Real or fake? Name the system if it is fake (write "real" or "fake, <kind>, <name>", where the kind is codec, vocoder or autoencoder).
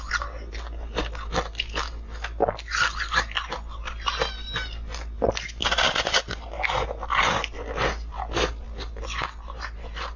real